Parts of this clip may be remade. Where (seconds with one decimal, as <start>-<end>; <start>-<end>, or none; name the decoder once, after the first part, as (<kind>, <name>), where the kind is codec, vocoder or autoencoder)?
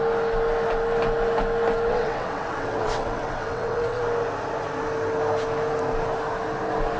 1.9-4.0 (vocoder, WaveNeXt)